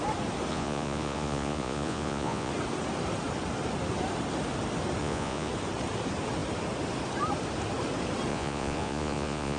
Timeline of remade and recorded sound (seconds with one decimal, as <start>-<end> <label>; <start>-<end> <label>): 0.0-0.5 recorded; 0.5-2.5 remade; 2.5-5.0 recorded; 5.0-5.5 remade; 5.5-8.3 recorded; 8.3-9.6 remade